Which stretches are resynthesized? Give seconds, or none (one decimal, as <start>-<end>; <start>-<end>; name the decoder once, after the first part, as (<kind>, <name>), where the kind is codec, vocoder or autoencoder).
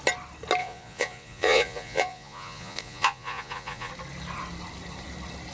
0.6-3.9 (vocoder, Vocos)